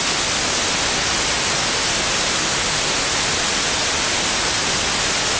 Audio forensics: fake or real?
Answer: real